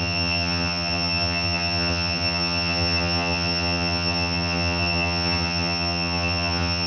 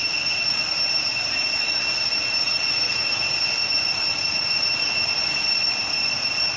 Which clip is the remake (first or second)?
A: first